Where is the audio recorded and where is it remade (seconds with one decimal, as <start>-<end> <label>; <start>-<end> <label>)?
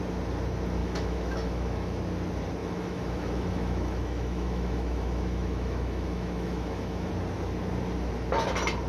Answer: 0.0-0.8 recorded; 0.8-2.0 remade; 2.0-2.6 recorded; 2.6-7.1 remade; 7.1-8.9 recorded